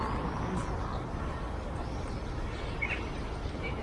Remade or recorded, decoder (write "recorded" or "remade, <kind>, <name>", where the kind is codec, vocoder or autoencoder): recorded